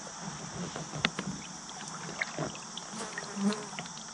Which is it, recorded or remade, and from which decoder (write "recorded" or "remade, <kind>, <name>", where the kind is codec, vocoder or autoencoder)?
remade, vocoder, BigVGAN v2